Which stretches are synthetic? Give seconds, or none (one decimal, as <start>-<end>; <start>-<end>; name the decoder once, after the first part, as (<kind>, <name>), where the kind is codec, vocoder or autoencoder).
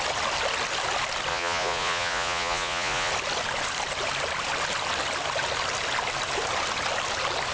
1.3-3.1 (vocoder, Vocos)